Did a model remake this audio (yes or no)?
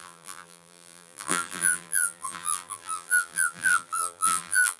yes